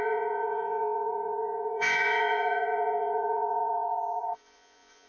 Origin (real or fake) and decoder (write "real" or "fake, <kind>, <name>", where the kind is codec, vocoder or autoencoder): fake, vocoder, Vocos